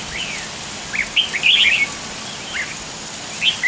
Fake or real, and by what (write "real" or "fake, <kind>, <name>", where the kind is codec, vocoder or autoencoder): real